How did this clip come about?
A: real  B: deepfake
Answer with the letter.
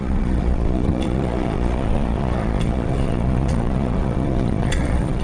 B